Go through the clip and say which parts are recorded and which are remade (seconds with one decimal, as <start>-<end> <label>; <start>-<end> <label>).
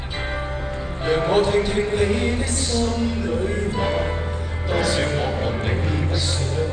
0.0-6.7 recorded